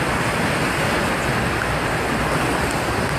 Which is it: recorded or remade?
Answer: recorded